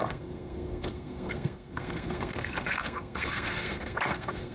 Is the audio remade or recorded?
remade